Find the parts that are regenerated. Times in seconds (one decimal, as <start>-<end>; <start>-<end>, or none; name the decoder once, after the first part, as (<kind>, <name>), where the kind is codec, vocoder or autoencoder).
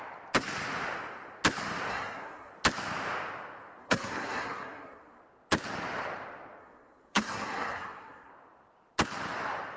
1.9-2.5 (codec, SNAC); 3.8-5.2; 6.6-8.3